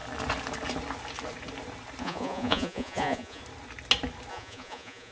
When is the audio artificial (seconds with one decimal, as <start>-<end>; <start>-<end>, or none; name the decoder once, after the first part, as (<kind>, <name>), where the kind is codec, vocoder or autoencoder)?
2.0-3.4 (vocoder, Vocos); 4.3-5.1